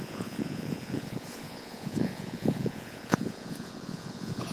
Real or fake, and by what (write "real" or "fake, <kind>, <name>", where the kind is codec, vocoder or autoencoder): fake, vocoder, Vocos